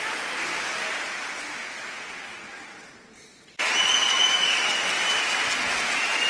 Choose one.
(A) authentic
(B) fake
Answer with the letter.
A